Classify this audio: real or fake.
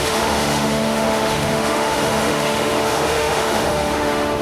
fake